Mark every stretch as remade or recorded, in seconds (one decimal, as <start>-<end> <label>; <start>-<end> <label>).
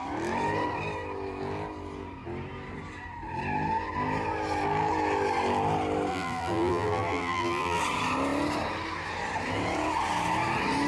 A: 0.0-6.1 recorded; 6.1-7.8 remade; 7.8-10.9 recorded